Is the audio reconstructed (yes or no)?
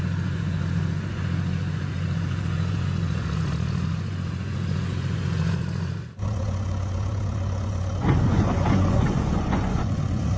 yes